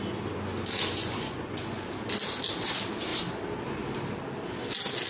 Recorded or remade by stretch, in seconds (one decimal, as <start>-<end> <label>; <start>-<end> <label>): 0.0-1.0 recorded; 1.0-1.9 remade; 1.9-5.1 recorded